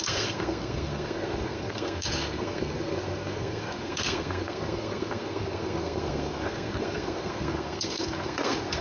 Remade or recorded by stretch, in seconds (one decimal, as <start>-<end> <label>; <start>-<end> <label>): 0.0-8.8 remade